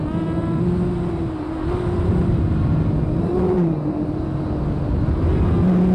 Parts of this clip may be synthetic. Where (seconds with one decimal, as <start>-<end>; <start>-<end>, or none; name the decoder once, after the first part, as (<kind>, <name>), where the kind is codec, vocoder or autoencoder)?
none